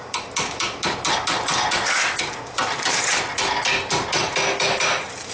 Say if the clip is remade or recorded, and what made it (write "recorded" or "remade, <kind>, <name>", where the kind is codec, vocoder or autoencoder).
recorded